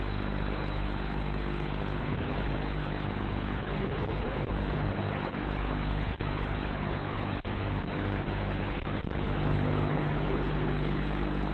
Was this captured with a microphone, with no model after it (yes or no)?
no